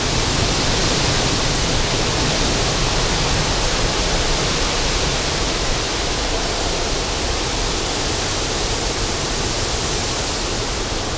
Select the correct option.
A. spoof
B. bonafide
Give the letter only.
B